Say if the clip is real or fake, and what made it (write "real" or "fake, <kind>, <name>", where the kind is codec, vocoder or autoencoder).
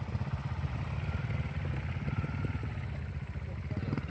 real